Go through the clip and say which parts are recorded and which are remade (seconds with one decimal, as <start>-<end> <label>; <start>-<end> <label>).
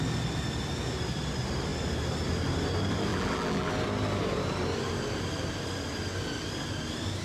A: 0.0-3.1 recorded; 3.1-3.7 remade; 3.7-7.2 recorded